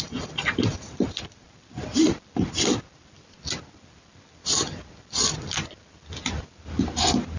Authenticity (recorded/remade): recorded